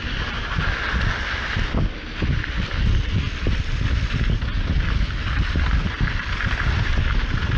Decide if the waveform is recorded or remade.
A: recorded